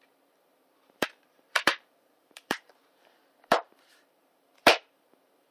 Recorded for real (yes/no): no